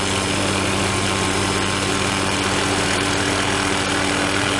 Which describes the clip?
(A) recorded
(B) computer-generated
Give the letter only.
A